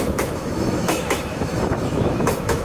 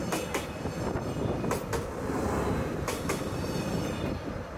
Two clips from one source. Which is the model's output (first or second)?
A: first